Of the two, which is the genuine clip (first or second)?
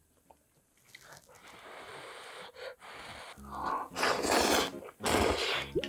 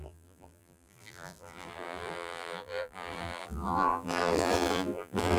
first